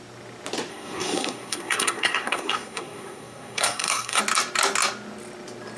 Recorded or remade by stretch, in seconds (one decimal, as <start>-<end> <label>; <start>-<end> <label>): 0.0-0.7 recorded; 0.7-4.2 remade; 4.2-5.8 recorded